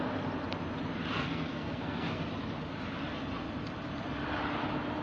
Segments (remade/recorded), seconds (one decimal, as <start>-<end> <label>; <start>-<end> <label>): 0.0-1.1 recorded; 1.1-2.2 remade; 2.2-5.0 recorded